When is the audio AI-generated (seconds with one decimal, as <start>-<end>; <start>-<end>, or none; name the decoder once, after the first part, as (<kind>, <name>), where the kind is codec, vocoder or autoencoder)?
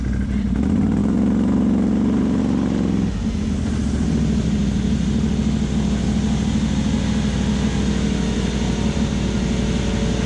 1.0-2.4 (vocoder, BigVGAN v2)